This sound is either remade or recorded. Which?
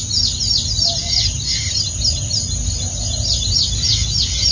recorded